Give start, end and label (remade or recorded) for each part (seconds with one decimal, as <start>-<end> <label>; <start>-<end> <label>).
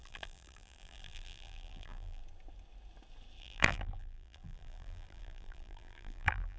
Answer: 0.0-2.2 remade; 2.2-3.4 recorded; 3.4-6.6 remade